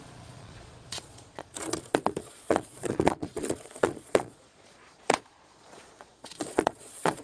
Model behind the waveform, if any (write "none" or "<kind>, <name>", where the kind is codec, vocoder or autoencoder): vocoder, Vocos